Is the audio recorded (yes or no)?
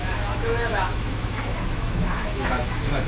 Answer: no